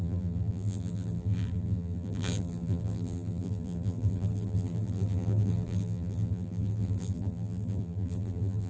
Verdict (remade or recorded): remade